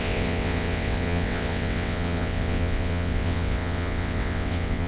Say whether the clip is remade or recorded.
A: remade